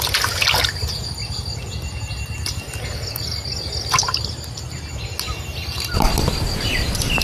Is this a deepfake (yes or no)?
no